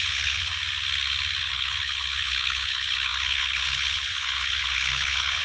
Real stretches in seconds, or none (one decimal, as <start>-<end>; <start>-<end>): 0.5-1.4